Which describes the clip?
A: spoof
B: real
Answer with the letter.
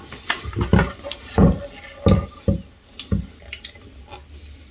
B